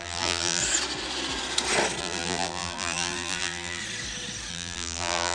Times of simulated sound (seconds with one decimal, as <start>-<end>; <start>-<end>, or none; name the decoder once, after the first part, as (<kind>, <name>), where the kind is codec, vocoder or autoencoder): 0.0-0.6 (vocoder, BigVGAN v2); 2.0-3.8; 4.5-5.3